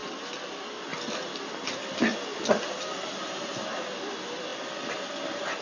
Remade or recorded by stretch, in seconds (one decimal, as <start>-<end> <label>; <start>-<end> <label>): 0.0-5.6 recorded